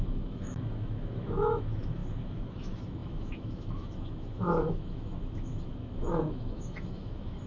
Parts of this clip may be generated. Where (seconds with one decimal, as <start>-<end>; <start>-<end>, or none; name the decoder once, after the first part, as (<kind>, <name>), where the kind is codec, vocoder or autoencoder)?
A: 0.0-7.5 (autoencoder, DAC-VAE)